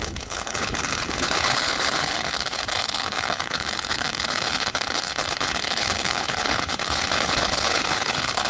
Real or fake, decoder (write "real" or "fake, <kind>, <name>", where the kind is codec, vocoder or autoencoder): fake, codec, HILCodec